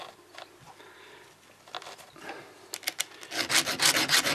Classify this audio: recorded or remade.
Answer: recorded